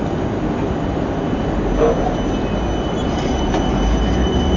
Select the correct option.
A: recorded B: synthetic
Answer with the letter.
A